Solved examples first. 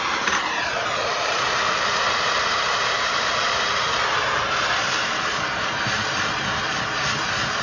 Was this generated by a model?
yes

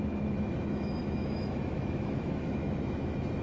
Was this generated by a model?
yes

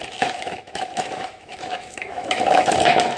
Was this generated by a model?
yes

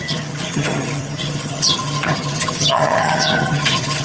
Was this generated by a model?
yes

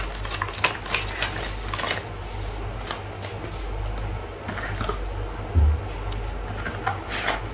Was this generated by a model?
no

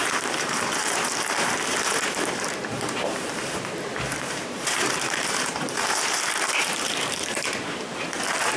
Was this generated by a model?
yes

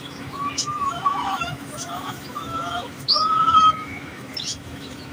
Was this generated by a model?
yes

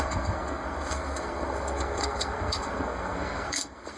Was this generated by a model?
yes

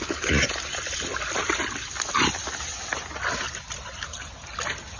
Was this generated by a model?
no